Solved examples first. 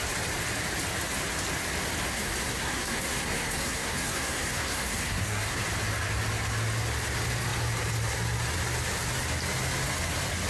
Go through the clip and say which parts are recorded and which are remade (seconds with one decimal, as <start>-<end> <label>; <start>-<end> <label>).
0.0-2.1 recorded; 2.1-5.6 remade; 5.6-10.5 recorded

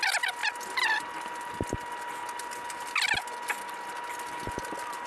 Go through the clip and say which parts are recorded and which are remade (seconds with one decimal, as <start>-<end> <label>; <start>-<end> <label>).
0.0-5.1 recorded

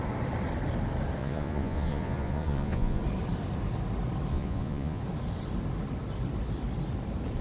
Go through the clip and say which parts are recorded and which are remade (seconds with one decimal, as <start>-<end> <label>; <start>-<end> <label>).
0.0-1.2 recorded; 1.2-3.0 remade; 3.0-4.3 recorded; 4.3-5.0 remade; 5.0-7.4 recorded

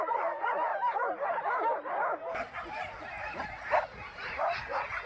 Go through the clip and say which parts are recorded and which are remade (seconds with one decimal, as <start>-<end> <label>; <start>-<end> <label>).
0.0-0.7 remade; 0.7-3.8 recorded; 3.8-5.1 remade

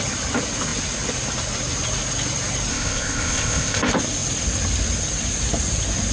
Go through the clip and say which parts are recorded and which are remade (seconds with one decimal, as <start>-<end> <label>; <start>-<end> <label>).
0.0-2.7 recorded; 2.7-3.8 remade; 3.8-6.1 recorded

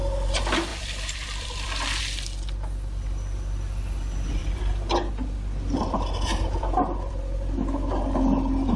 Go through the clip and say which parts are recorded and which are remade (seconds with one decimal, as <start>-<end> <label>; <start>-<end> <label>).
0.0-0.7 recorded; 0.7-2.0 remade; 2.0-4.4 recorded; 4.4-7.1 remade; 7.1-8.8 recorded

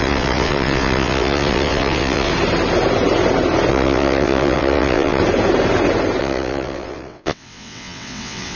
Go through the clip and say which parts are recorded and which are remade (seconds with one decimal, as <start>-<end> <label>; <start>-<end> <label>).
0.0-2.3 remade; 2.3-3.7 recorded; 3.7-5.2 remade; 5.2-6.2 recorded; 6.2-8.6 remade

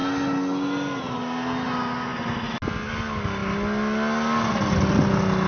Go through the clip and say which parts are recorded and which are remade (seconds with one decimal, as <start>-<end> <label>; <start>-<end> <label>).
0.0-5.5 recorded